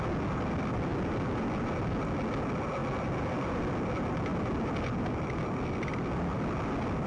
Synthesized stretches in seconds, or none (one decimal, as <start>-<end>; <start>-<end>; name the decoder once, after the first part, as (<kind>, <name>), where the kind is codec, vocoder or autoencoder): none

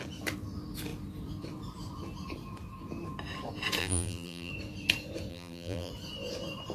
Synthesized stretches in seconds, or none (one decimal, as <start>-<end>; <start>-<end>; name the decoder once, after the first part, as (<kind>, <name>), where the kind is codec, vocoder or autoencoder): 3.8-4.5 (vocoder, BigVGAN v2); 5.3-5.9

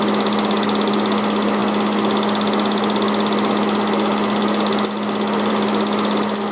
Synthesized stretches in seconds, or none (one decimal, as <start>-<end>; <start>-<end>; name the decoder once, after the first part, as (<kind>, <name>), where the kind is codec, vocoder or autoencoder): none

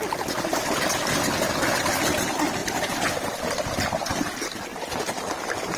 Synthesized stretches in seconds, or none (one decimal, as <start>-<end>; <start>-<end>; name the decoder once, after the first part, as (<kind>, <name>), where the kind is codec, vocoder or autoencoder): 2.6-3.3 (vocoder, BigVGAN v2)

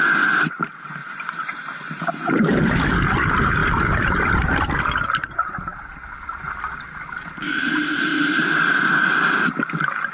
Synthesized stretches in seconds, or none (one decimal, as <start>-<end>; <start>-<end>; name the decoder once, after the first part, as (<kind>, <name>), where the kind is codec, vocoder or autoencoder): 1.0-3.0 (vocoder, BigVGAN v2)